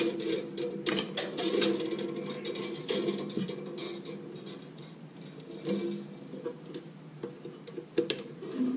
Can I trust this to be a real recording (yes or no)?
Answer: yes